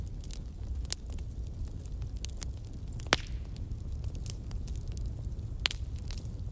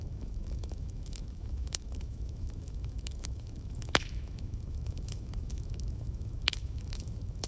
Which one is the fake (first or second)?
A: second